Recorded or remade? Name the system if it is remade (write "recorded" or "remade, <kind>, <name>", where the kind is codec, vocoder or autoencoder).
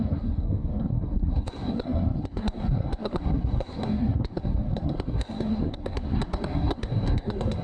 remade, codec, SNAC